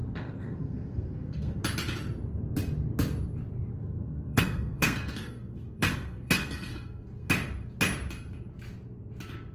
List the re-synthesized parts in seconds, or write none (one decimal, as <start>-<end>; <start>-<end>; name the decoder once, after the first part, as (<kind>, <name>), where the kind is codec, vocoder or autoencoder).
0.0-1.6 (codec, SNAC); 3.7-7.3